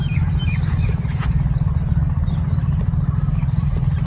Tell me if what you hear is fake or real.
real